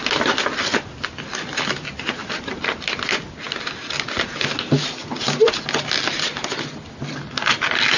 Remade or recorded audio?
recorded